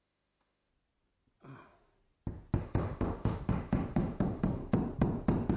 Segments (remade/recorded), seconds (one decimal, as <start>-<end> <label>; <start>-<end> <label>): 0.0-0.7 remade; 0.7-2.6 recorded; 2.6-4.6 remade; 4.6-5.6 recorded